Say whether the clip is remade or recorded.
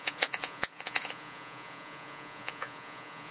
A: remade